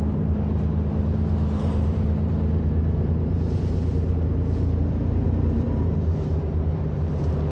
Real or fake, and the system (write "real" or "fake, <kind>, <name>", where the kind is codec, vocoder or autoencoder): fake, vocoder, BigVGAN v2